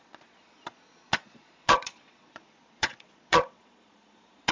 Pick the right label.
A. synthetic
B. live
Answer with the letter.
A